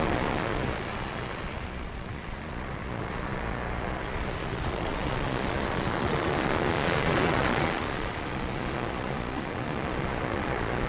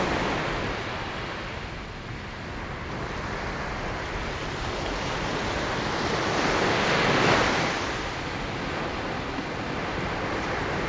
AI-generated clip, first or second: first